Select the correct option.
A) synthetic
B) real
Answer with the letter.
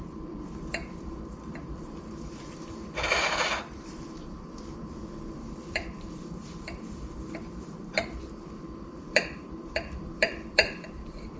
A